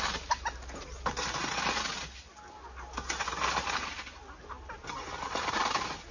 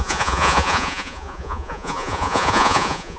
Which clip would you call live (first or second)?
first